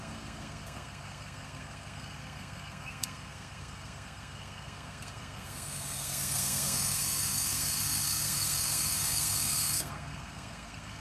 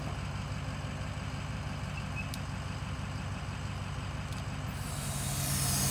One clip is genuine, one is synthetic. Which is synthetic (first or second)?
first